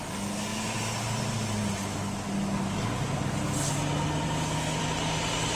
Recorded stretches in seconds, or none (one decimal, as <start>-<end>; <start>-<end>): 0.0-5.6